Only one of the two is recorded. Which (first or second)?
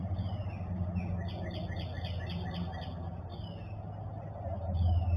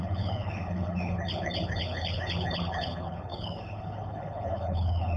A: first